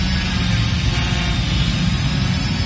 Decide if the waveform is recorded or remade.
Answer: recorded